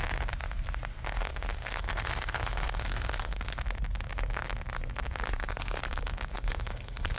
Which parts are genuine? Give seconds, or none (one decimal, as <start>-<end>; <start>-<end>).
0.0-0.9; 3.6-5.3; 5.8-6.3